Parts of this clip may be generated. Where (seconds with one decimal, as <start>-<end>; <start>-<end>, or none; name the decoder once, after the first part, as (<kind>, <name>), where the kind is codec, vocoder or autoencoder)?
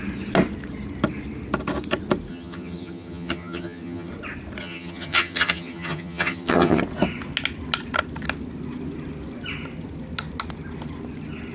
2.3-4.1 (vocoder, HiFi-GAN); 4.6-6.8